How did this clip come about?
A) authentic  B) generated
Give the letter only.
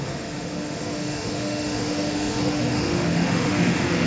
B